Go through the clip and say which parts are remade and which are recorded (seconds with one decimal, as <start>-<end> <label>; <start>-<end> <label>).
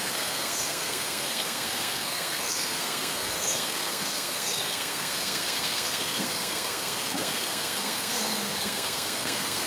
0.0-9.7 remade